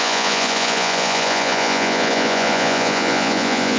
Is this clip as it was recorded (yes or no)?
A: no